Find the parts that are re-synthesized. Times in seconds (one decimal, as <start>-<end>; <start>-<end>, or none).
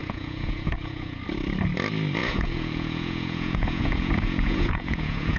0.0-1.2; 2.2-5.4